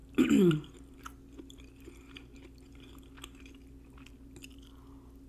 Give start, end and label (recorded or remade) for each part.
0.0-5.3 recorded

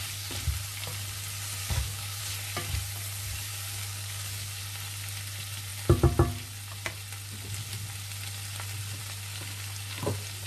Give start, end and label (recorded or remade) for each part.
0.0-1.6 recorded; 1.6-2.2 remade; 2.2-3.5 recorded; 3.5-4.6 remade; 4.6-10.5 recorded

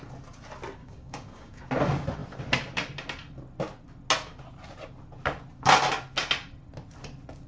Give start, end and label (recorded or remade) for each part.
0.0-0.8 recorded; 0.8-1.7 remade; 1.7-7.5 recorded

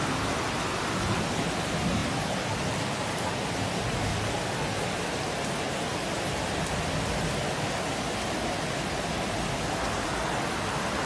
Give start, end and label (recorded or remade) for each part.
0.0-11.1 recorded

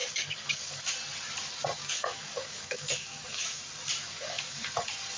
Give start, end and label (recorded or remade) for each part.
0.0-0.8 remade; 0.8-1.8 recorded; 1.8-3.6 remade; 3.6-4.0 recorded; 4.0-4.6 remade; 4.6-5.2 recorded